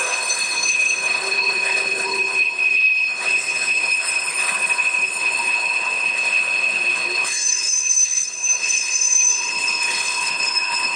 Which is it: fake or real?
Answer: fake